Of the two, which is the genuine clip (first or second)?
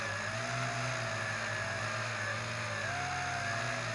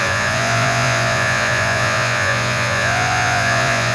first